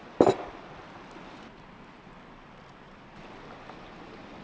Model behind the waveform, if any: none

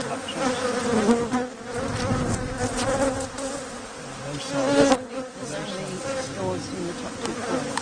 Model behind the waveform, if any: none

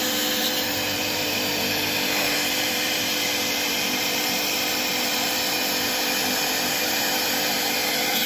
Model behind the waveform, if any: vocoder, BigVGAN v2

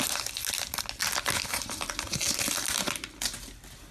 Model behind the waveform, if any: none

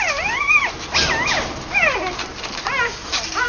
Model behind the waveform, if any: none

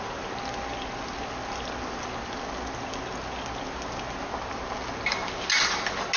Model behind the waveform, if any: none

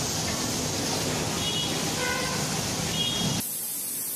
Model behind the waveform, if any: none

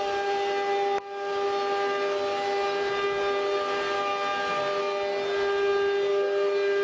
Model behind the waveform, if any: none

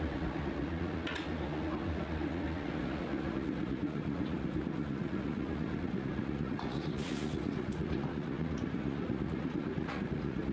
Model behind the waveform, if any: vocoder, Vocos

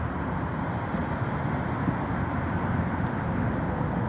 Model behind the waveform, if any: none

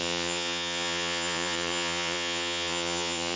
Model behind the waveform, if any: vocoder, Vocos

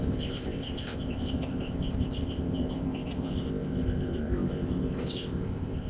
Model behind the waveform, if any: codec, ZipCodec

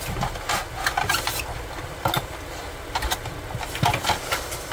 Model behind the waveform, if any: none